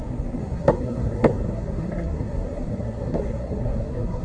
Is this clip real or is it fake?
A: fake